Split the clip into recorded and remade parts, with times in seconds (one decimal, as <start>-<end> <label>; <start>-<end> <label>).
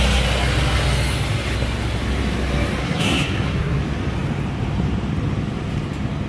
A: 0.0-2.8 recorded; 2.8-3.8 remade; 3.8-6.3 recorded